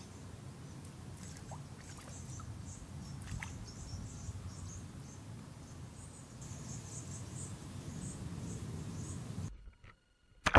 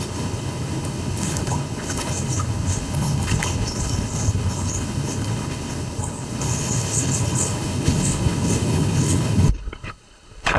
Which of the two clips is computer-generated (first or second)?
second